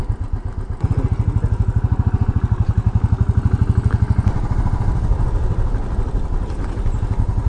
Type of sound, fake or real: real